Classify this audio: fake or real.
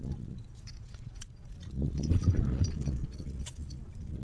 fake